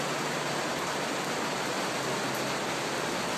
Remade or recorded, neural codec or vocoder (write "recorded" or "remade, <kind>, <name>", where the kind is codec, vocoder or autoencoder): recorded